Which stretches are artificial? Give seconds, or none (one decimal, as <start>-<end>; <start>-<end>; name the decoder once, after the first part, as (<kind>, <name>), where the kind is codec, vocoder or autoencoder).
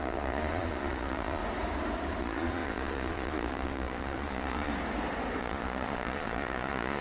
0.0-1.4 (vocoder, Vocos); 2.2-4.7; 5.4-7.0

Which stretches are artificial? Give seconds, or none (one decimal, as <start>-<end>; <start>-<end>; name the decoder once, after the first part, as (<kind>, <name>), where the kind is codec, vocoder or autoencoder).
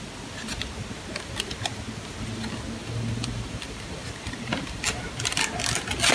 2.8-4.8 (vocoder, BigVGAN v2)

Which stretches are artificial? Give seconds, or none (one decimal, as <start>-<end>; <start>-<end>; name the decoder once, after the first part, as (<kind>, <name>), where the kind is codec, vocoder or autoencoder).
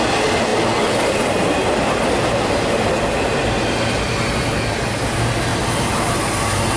none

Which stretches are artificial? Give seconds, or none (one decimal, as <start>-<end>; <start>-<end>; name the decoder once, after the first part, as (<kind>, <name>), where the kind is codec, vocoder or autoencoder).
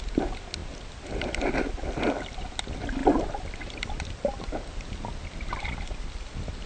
none